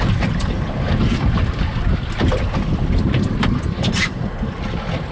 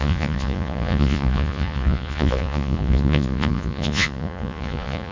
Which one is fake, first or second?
second